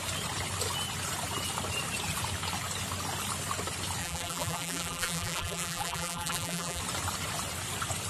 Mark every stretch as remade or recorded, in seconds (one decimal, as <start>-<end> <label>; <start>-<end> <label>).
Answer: 0.0-4.0 recorded; 4.0-6.8 remade; 6.8-8.1 recorded